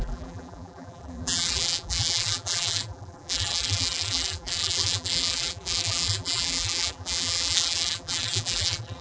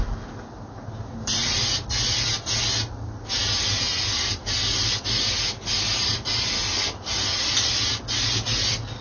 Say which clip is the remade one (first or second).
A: first